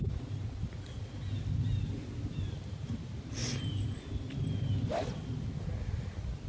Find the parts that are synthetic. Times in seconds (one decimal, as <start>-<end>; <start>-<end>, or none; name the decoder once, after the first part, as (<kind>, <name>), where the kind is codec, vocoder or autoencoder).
none